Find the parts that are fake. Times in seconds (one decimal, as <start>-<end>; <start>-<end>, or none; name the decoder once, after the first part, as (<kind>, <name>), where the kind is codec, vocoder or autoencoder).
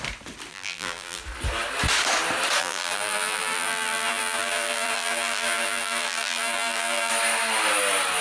0.5-1.2 (vocoder, BigVGAN v2); 2.6-7.1